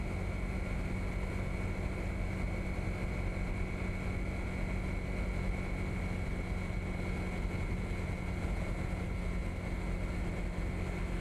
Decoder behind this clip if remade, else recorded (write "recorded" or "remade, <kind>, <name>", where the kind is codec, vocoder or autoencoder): recorded